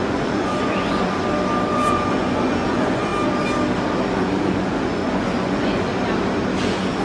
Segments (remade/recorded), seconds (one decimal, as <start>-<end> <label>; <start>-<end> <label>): 0.0-1.2 remade; 1.2-1.7 recorded; 1.7-3.1 remade; 3.1-4.1 recorded; 4.1-5.9 remade; 5.9-6.6 recorded; 6.6-7.0 remade